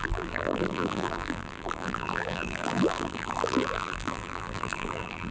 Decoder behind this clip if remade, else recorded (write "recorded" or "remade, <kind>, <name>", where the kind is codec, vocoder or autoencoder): remade, vocoder, BigVGAN v2